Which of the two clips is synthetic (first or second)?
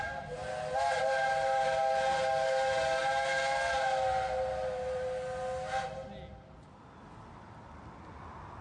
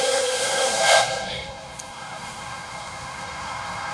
second